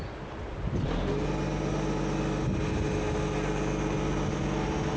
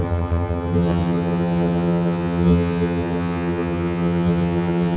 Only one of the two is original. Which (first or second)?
first